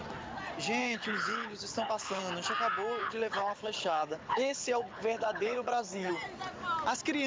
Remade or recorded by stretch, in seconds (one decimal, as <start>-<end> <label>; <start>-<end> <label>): 0.0-0.8 recorded; 0.8-2.2 remade; 2.2-3.0 recorded; 3.0-6.1 remade; 6.1-7.3 recorded